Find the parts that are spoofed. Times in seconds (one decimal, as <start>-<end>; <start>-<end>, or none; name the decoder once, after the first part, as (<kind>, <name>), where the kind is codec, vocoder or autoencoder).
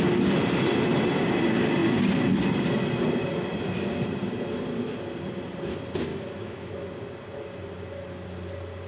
6.1-6.7 (autoencoder, DAC-VAE)